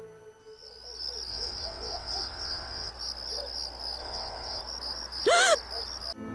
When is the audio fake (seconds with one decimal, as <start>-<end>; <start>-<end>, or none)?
1.3-2.9; 4.0-4.6